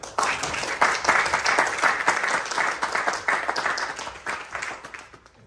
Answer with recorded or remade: recorded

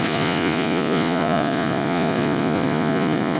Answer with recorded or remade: remade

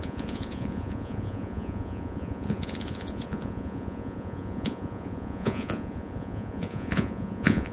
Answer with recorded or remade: remade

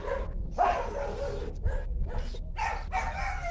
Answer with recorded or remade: recorded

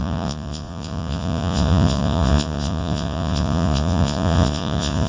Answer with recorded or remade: remade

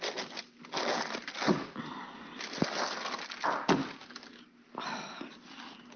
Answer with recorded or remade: recorded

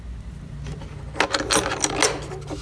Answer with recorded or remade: recorded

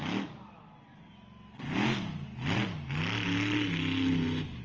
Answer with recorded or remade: recorded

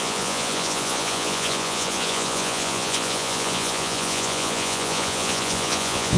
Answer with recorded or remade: remade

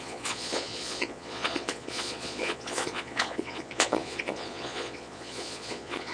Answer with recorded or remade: remade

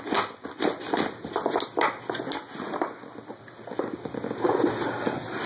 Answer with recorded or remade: recorded